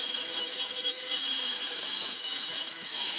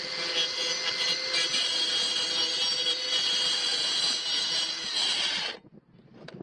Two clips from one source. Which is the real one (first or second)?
second